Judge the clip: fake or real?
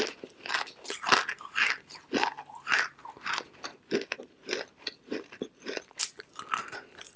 real